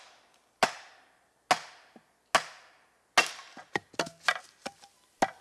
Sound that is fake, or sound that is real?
real